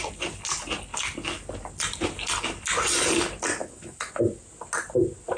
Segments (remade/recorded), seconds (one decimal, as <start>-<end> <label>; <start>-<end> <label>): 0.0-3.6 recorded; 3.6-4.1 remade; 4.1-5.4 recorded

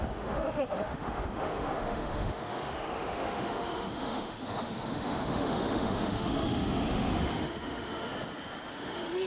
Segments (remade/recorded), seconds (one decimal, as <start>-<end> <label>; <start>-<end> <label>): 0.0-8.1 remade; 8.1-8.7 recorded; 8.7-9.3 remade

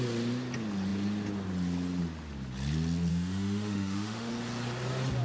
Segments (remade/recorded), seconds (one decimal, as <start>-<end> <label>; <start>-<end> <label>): 0.0-3.1 recorded; 3.1-4.3 remade; 4.3-5.2 recorded

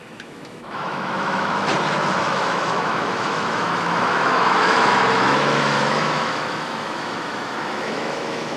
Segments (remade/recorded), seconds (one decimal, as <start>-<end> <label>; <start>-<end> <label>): 0.0-1.7 remade; 1.7-2.2 recorded; 2.2-8.6 remade

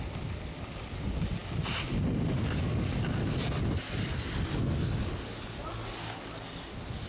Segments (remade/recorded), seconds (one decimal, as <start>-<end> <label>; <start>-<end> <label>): 0.0-7.1 recorded

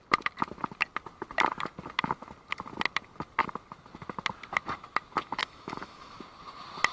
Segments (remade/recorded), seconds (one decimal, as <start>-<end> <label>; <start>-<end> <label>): 0.0-5.4 recorded; 5.4-6.2 remade; 6.2-6.9 recorded